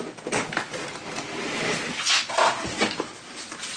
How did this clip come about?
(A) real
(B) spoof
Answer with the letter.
A